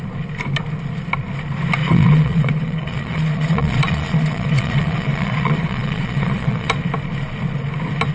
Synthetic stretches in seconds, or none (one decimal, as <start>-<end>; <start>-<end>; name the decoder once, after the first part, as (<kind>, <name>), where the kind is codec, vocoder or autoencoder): 1.8-6.7 (vocoder, Vocos)